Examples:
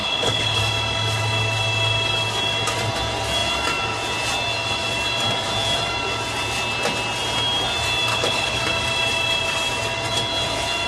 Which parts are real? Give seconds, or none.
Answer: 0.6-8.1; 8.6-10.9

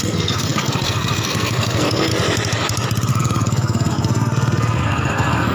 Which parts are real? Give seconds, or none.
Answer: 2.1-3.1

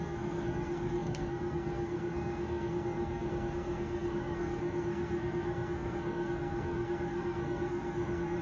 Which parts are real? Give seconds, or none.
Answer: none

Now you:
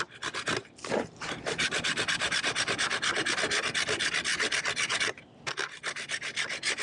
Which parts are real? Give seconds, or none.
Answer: 0.0-6.8

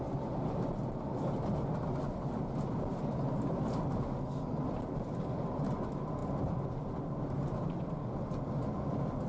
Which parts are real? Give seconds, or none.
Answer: 0.0-9.3